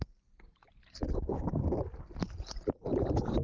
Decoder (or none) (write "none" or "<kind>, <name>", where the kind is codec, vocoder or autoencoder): none